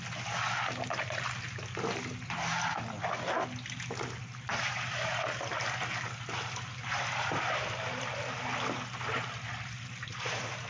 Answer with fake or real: real